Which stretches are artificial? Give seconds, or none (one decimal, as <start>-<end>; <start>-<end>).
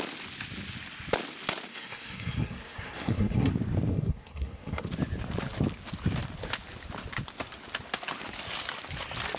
1.7-3.5; 3.9-4.9